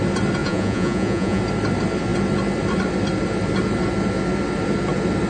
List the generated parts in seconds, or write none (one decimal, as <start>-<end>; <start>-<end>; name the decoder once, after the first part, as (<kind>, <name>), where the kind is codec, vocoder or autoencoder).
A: 0.4-1.4 (vocoder, Vocos)